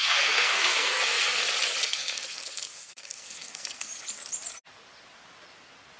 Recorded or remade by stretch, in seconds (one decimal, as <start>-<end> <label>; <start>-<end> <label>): 0.0-1.4 remade; 1.4-1.8 recorded; 1.8-3.9 remade; 3.9-6.0 recorded